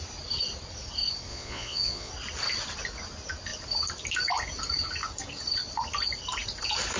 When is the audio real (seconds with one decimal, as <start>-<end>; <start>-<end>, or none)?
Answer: 0.0-1.3; 2.1-7.0